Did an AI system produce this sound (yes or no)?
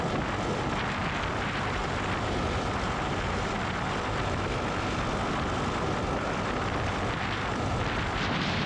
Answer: no